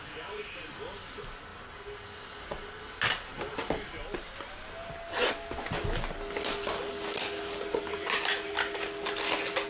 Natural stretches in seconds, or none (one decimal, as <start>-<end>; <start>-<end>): 0.0-9.7

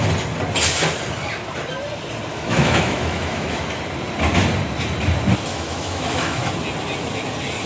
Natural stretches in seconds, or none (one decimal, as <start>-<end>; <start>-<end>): 0.0-2.3; 3.8-5.5; 6.5-7.7

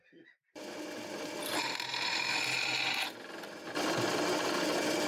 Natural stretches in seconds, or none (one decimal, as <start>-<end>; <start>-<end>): 0.0-5.1

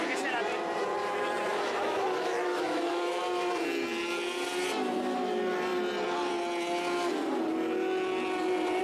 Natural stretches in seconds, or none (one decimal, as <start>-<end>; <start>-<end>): 0.0-1.5; 3.2-8.8

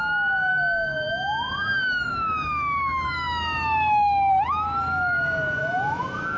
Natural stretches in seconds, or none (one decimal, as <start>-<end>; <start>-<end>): 0.0-0.5; 4.3-5.6

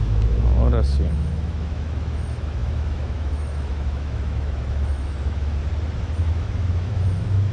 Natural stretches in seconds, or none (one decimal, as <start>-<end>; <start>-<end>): 5.6-6.2